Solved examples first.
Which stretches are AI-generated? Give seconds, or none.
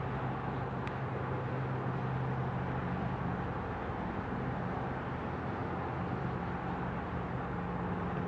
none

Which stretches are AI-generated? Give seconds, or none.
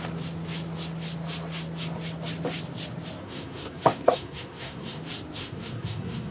3.2-5.0 (codec, SNAC); 5.4-6.3